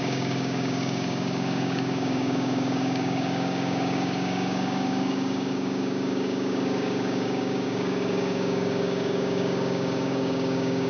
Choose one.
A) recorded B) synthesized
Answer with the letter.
B